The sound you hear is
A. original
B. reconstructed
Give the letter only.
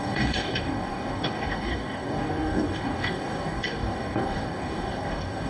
B